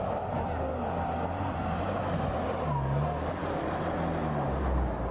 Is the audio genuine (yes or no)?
yes